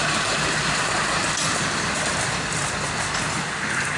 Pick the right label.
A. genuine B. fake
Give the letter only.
A